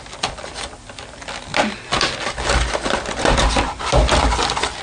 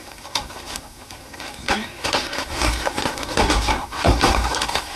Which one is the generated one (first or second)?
second